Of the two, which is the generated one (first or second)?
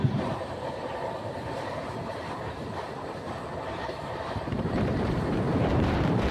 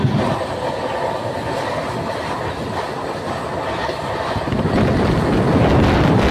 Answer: first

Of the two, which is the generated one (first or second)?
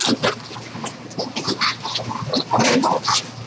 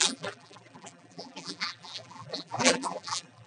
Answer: second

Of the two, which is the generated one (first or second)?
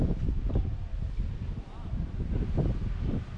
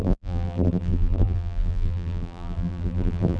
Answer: second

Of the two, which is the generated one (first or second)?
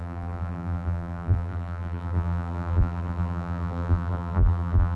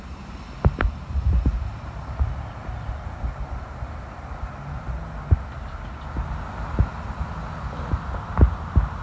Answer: first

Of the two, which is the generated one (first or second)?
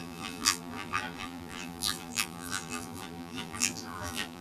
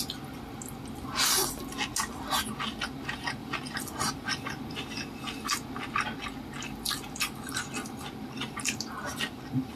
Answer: first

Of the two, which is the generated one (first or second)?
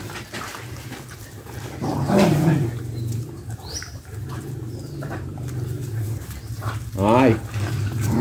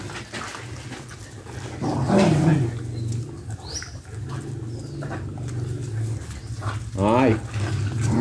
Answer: first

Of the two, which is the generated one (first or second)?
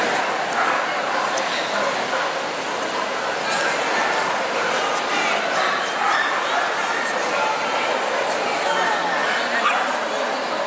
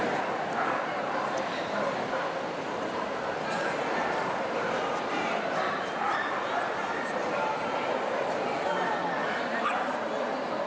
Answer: second